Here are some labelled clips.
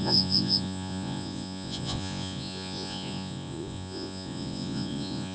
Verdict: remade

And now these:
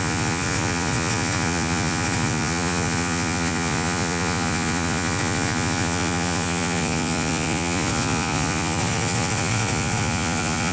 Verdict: remade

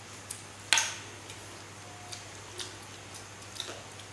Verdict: recorded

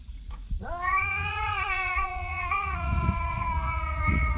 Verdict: remade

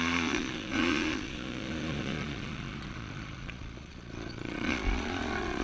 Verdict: remade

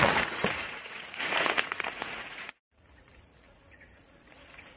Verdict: remade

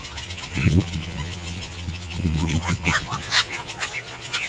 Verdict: remade